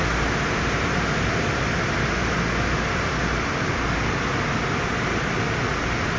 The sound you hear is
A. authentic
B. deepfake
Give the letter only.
A